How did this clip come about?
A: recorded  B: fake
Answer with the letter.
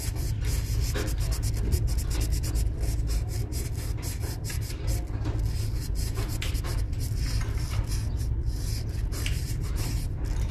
A